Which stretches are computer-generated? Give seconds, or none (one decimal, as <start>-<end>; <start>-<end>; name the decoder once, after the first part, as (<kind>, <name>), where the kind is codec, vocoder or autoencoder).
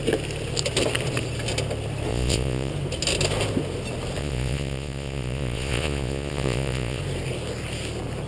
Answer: 2.1-2.7 (vocoder, Vocos); 4.2-7.0